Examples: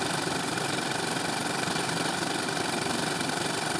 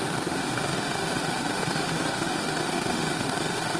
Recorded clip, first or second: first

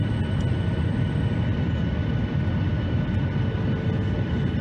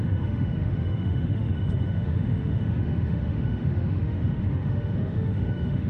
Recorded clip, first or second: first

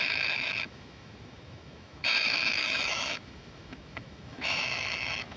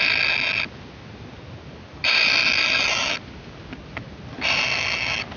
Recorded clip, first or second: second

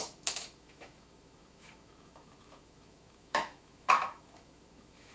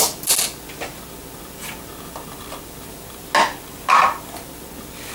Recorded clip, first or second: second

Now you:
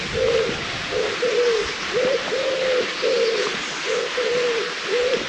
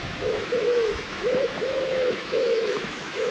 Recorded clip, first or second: first